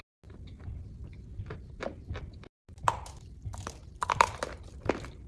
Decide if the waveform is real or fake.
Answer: real